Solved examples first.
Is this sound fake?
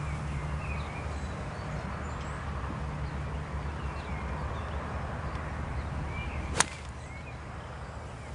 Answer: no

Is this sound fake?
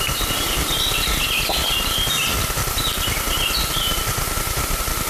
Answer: yes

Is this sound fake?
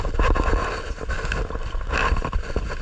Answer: no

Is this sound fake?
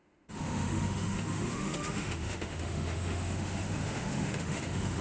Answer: yes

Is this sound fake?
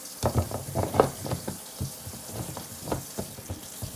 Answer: no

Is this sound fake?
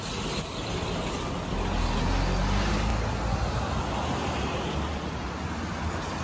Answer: no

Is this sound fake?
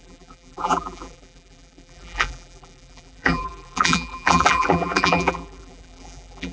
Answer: yes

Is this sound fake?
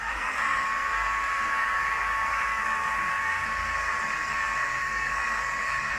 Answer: yes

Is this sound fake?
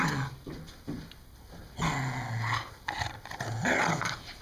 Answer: no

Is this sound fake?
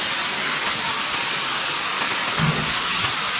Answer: no